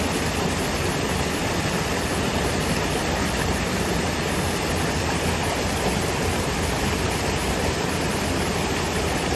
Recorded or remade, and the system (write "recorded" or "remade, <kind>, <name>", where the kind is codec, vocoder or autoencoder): recorded